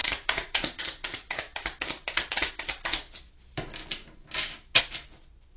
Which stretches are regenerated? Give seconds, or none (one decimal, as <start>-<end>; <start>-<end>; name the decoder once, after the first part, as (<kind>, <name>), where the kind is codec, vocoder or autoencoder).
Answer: 0.0-0.8 (vocoder, Vocos)